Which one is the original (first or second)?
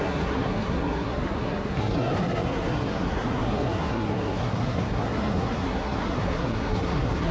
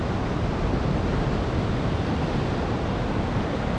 second